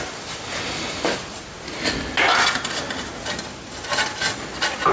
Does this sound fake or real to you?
real